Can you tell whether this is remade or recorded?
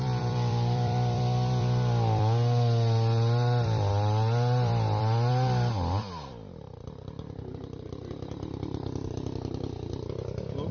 remade